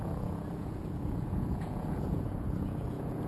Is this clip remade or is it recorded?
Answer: remade